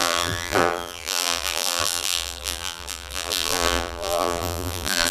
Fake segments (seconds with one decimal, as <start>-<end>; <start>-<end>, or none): 0.0-5.1